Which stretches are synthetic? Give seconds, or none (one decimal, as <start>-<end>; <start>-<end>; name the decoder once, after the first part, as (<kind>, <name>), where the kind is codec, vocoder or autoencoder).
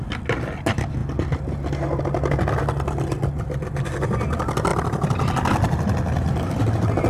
none